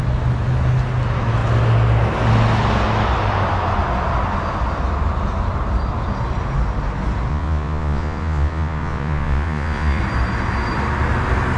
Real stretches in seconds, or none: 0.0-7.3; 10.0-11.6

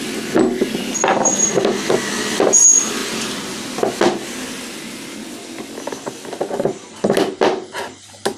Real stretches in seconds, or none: 0.0-3.0; 3.7-8.4

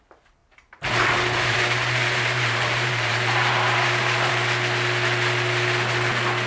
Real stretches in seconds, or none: 0.0-0.4; 4.3-6.5

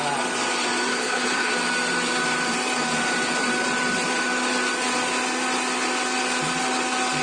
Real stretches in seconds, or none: 0.0-0.9; 1.5-7.2